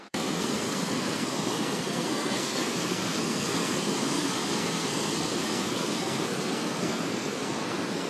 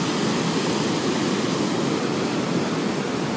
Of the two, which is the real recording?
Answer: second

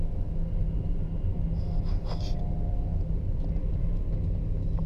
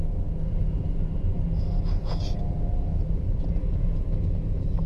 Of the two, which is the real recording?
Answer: first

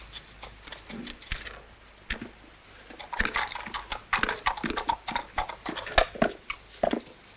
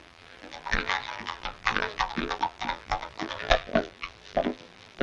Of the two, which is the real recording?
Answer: first